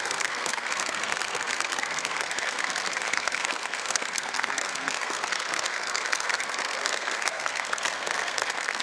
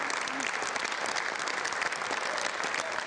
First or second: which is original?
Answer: second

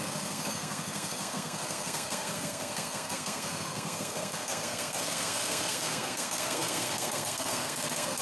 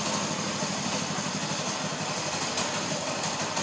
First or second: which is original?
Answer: second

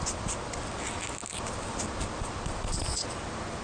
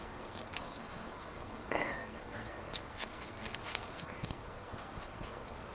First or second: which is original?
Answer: first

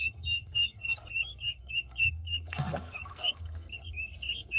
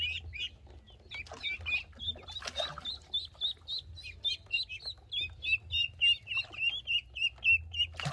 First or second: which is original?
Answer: second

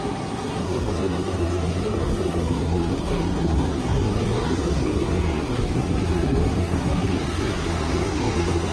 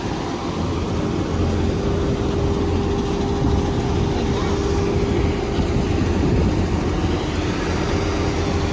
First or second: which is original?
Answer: second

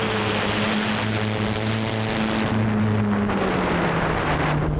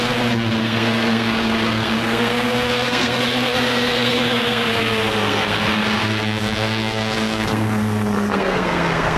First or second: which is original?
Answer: first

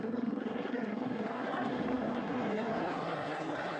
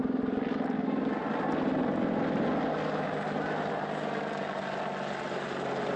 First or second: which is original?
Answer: second